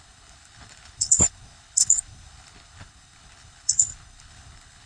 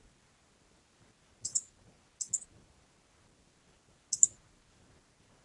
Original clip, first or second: second